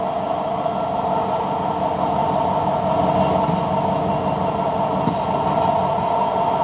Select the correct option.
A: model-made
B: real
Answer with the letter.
B